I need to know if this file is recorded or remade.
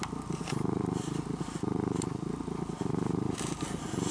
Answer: recorded